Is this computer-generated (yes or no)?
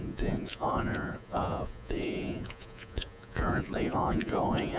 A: yes